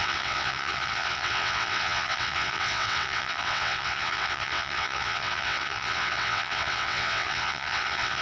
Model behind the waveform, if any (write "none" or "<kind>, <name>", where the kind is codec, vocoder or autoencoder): vocoder, WaveNeXt